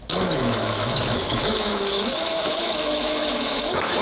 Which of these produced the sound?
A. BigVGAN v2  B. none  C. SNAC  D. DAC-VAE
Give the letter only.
D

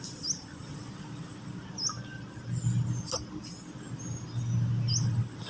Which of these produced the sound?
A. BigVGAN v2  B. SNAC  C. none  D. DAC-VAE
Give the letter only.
C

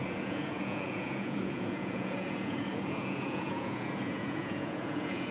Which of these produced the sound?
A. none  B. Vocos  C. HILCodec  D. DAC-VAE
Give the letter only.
B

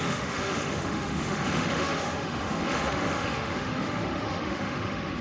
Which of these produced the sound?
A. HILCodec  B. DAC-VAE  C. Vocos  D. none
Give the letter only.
B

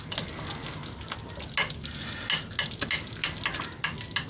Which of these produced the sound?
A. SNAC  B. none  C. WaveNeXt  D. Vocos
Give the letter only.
B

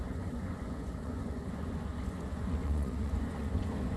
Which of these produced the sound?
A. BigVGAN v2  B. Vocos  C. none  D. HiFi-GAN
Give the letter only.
B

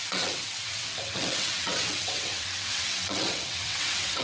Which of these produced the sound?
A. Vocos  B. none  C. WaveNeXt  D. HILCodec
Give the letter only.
C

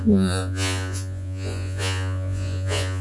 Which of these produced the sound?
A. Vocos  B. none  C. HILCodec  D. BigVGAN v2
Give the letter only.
A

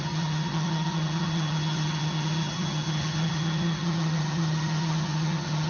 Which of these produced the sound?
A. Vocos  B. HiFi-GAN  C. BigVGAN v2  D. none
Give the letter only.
B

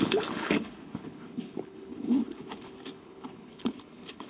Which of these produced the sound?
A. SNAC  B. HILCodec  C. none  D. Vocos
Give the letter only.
B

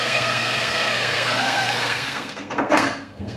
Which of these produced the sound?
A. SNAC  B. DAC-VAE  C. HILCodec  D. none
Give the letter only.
A